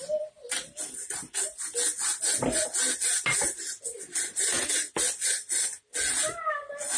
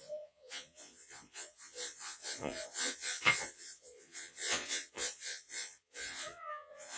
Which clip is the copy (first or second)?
second